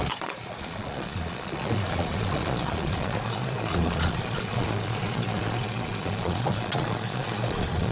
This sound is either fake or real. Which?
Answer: fake